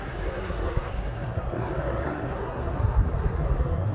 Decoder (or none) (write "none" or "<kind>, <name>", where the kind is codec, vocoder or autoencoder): codec, SNAC